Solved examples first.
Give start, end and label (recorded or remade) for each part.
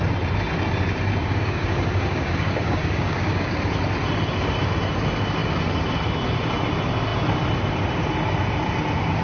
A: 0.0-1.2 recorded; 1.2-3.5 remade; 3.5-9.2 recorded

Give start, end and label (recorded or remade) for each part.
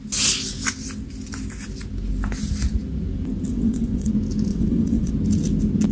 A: 0.0-3.5 recorded; 3.5-4.1 remade; 4.1-4.5 recorded; 4.5-5.1 remade; 5.1-5.9 recorded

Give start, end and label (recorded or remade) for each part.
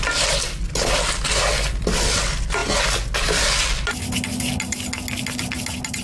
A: 0.0-6.0 recorded